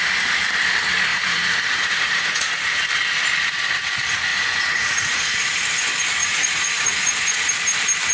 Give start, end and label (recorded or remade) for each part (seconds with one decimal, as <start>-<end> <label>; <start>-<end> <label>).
0.0-1.1 recorded; 1.1-2.7 remade; 2.7-4.3 recorded; 4.3-5.6 remade; 5.6-6.2 recorded; 6.2-7.5 remade; 7.5-8.1 recorded